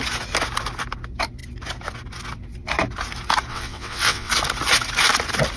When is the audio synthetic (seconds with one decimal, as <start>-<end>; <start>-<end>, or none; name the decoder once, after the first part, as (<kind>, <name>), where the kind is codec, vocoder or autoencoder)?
3.5-4.3 (vocoder, WaveNeXt)